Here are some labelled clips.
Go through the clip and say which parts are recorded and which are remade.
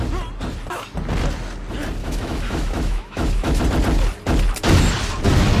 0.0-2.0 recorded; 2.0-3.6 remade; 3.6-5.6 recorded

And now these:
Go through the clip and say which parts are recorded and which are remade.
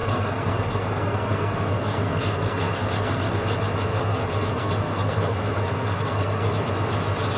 0.0-3.3 remade; 3.3-3.9 recorded; 3.9-6.7 remade; 6.7-7.4 recorded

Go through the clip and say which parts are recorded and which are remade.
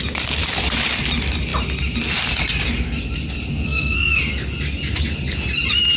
0.0-3.5 recorded; 3.5-4.2 remade; 4.2-6.0 recorded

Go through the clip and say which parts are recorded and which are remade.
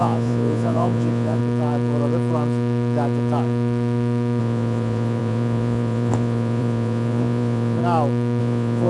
0.0-1.4 remade; 1.4-4.4 recorded; 4.4-7.8 remade; 7.8-8.4 recorded; 8.4-8.9 remade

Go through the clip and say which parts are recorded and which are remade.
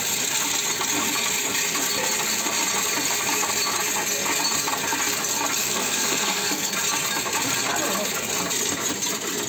0.0-5.6 recorded; 5.6-6.7 remade; 6.7-9.5 recorded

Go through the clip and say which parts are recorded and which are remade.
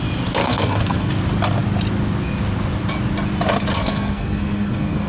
0.0-0.4 recorded; 0.4-1.1 remade; 1.1-3.7 recorded; 3.7-5.1 remade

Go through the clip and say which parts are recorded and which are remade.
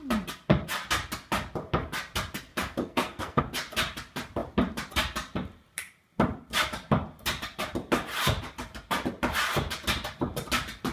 0.0-2.5 recorded; 2.5-3.4 remade; 3.4-10.9 recorded